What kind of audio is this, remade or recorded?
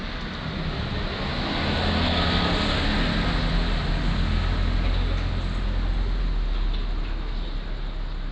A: recorded